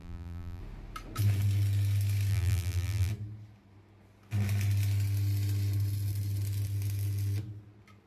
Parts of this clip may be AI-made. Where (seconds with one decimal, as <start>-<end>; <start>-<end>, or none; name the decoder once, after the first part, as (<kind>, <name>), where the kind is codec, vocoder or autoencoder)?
0.0-0.6 (vocoder, BigVGAN v2); 2.3-3.1